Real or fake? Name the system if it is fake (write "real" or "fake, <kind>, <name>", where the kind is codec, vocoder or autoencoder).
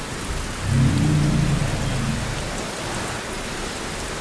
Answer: real